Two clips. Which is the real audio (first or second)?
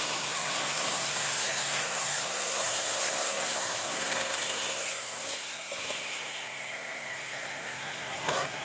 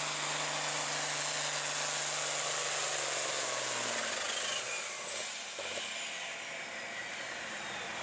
second